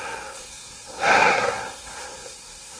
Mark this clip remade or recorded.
remade